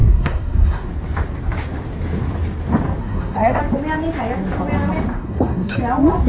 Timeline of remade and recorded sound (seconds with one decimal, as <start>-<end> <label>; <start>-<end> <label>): 0.0-0.9 remade; 0.9-3.0 recorded; 3.0-3.6 remade; 3.6-5.1 recorded; 5.1-5.8 remade; 5.8-6.3 recorded